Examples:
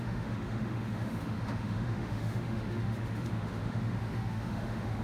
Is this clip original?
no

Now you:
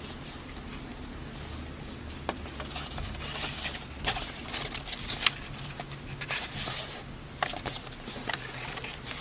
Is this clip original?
yes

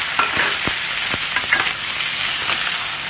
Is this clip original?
yes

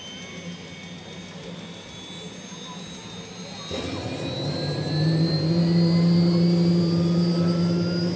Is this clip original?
yes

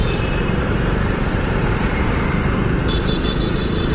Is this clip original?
no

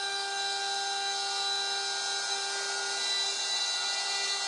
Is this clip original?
yes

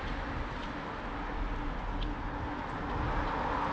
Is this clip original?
yes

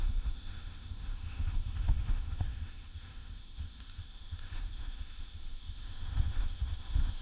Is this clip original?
no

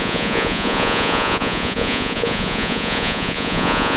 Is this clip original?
no